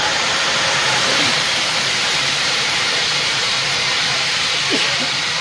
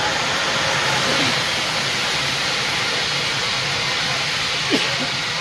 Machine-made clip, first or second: first